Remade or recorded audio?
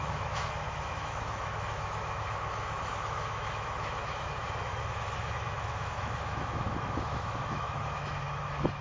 remade